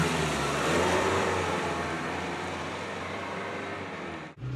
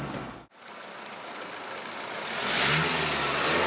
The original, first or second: second